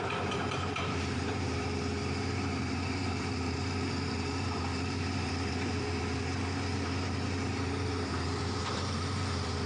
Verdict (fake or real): fake